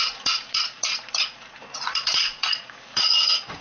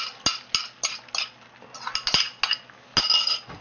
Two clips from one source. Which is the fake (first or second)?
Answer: first